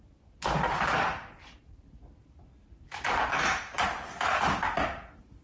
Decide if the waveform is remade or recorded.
recorded